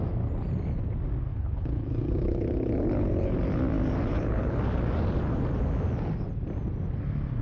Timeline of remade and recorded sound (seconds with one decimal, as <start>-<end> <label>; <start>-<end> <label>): 0.0-1.3 recorded; 1.3-3.4 remade; 3.4-4.1 recorded; 4.1-4.6 remade; 4.6-7.4 recorded